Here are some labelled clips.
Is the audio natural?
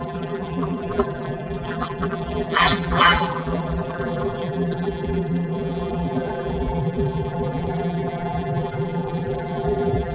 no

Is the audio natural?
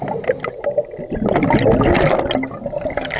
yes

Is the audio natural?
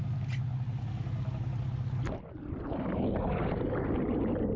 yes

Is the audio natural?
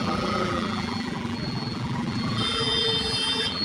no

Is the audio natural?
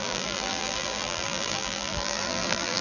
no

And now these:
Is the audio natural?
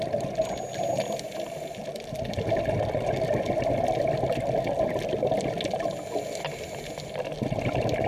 yes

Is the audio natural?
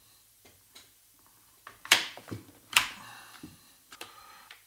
no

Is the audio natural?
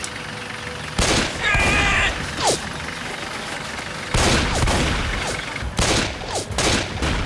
yes